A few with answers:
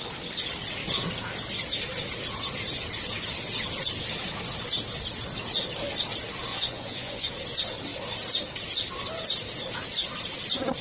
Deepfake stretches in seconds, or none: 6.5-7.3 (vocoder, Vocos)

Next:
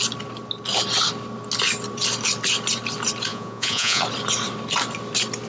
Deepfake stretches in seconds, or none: 3.3-4.0 (vocoder, Vocos)

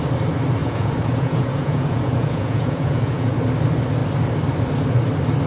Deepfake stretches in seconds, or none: 0.6-3.4 (vocoder, Vocos)

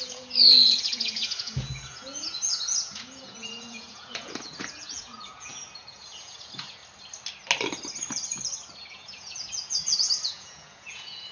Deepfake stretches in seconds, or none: 0.0-6.8 (vocoder, Vocos); 8.9-11.3

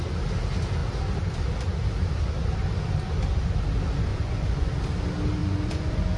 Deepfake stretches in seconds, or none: 4.1-4.7 (vocoder, Vocos); 5.4-6.2

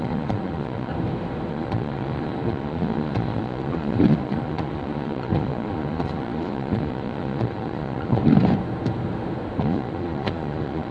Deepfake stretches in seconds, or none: 0.0-0.9 (vocoder, Vocos); 1.5-8.2; 9.6-10.9

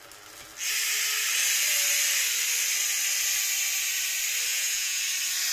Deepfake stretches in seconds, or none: 4.5-5.0 (vocoder, Vocos)

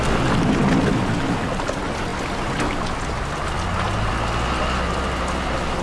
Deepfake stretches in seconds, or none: none